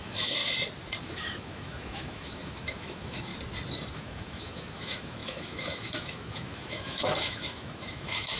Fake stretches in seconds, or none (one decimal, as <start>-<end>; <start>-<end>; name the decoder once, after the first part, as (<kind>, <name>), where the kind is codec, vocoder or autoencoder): 0.0-0.4 (autoencoder, DAC-VAE); 1.0-3.3; 3.9-8.4